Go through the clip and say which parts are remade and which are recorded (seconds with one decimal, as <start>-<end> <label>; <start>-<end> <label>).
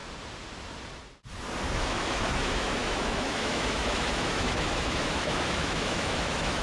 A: 0.0-1.8 recorded; 1.8-6.6 remade